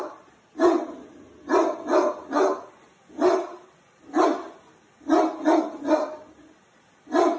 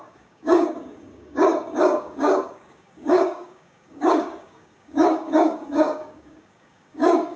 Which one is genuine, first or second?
first